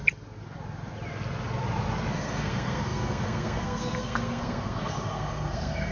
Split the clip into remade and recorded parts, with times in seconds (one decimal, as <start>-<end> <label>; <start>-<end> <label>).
0.0-2.1 recorded; 2.1-5.9 remade

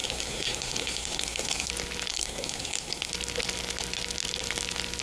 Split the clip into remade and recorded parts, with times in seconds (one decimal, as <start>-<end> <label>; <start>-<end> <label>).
0.0-1.7 remade; 1.7-2.1 recorded; 2.1-3.1 remade; 3.1-5.0 recorded

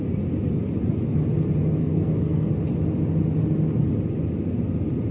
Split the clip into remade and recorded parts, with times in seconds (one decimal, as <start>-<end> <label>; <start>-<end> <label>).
0.0-1.8 recorded; 1.8-2.5 remade; 2.5-5.1 recorded

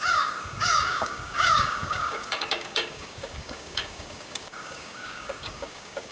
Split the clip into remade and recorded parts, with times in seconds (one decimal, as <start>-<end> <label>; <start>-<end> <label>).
0.0-6.1 remade

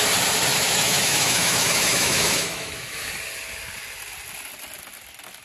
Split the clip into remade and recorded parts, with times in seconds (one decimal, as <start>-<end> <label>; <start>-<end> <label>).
0.0-0.5 recorded; 0.5-3.1 remade; 3.1-5.4 recorded